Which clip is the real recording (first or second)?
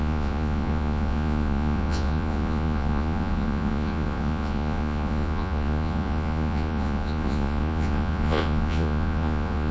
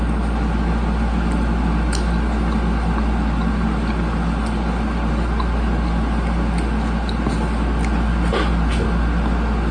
second